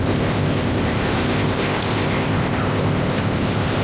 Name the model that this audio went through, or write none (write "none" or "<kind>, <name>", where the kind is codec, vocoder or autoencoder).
codec, ZipCodec